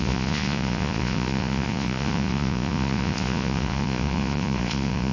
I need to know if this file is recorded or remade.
remade